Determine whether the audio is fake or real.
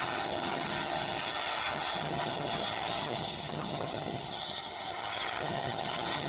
fake